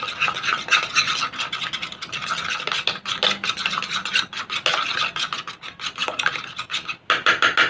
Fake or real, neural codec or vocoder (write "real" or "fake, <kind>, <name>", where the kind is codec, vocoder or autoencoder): real